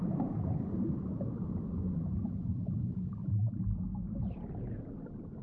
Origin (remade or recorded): recorded